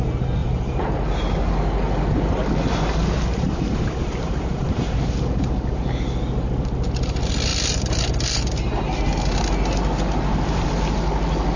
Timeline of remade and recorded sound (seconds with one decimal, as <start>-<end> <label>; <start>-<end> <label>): 0.0-0.4 recorded; 0.4-1.2 remade; 1.2-3.3 recorded; 3.3-5.1 remade; 5.1-11.6 recorded